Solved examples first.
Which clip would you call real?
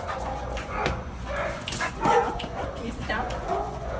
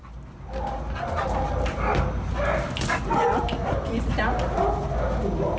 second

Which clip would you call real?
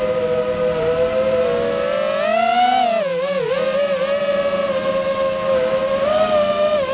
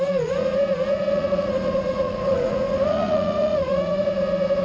first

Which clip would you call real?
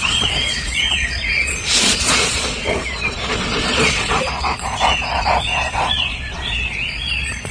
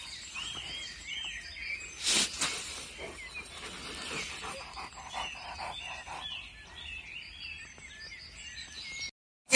second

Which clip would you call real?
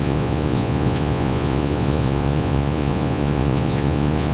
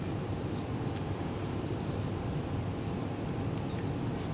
second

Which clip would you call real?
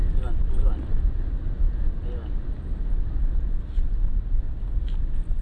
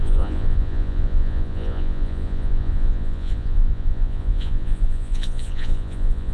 first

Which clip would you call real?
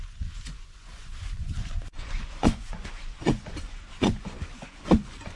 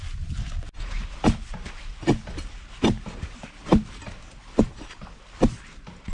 second